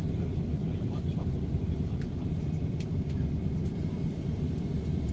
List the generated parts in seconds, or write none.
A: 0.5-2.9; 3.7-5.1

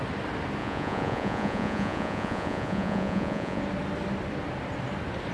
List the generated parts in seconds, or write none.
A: 0.6-3.6

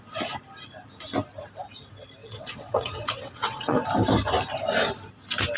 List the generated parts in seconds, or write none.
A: 2.2-3.8

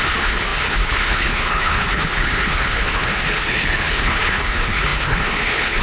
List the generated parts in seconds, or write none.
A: 0.0-5.8

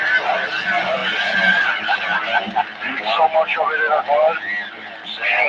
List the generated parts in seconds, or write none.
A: none

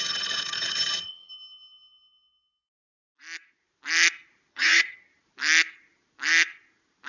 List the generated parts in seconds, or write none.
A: 0.0-1.3; 4.5-5.1